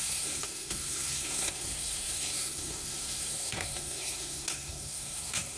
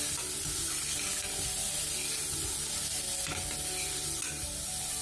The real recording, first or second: second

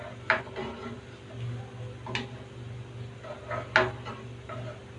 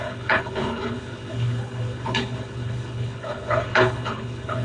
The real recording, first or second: first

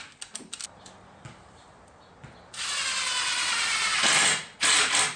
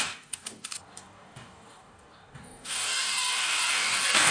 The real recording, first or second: first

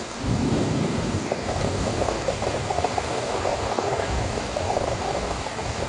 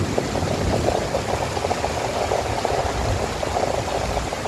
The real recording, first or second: second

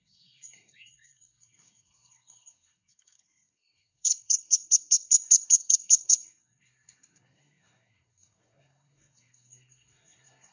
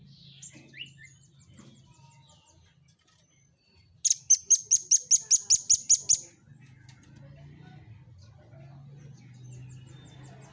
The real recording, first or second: second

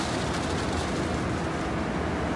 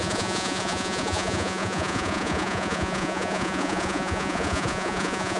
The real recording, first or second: first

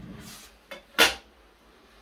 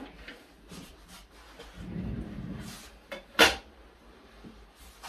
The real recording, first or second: first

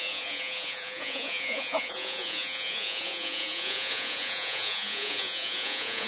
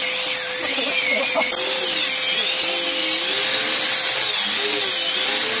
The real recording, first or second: second